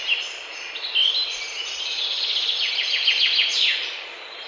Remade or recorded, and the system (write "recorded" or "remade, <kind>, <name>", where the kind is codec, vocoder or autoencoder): recorded